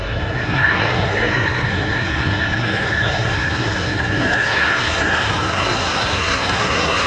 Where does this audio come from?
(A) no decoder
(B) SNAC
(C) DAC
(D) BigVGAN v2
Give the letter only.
B